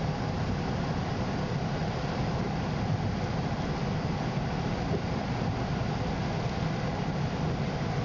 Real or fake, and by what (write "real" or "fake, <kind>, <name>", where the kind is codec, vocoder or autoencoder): real